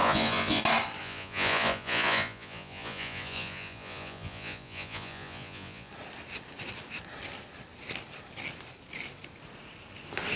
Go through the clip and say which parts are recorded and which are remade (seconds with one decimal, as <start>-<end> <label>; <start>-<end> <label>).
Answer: 0.0-0.6 remade; 0.6-1.0 recorded; 1.0-5.9 remade; 5.9-10.4 recorded

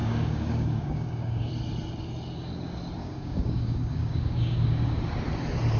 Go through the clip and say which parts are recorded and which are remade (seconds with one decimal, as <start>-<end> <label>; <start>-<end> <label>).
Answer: 0.0-1.5 remade; 1.5-3.0 recorded; 3.0-5.0 remade; 5.0-5.8 recorded

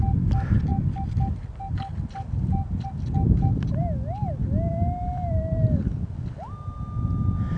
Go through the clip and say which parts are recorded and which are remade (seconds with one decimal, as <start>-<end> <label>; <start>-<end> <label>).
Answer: 0.0-4.7 recorded; 4.7-5.9 remade; 5.9-7.6 recorded